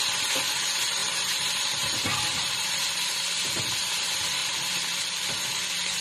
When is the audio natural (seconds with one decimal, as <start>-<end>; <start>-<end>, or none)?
0.0-1.0; 3.3-4.4; 5.2-6.0